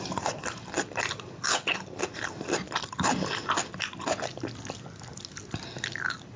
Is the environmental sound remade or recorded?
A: recorded